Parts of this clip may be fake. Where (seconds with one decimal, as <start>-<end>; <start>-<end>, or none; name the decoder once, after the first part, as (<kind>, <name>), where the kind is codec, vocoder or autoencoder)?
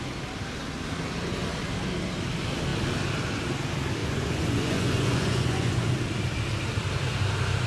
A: 4.0-5.9 (vocoder, Vocos)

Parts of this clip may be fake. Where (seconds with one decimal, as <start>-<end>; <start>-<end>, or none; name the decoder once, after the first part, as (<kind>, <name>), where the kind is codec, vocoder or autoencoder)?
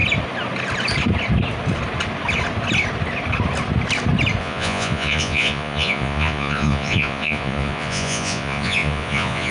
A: 4.4-9.5 (vocoder, Vocos)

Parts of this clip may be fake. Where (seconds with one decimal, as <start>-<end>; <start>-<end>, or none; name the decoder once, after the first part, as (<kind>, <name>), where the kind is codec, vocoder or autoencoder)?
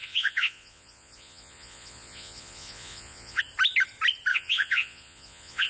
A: 0.0-3.4 (vocoder, Vocos); 4.3-5.7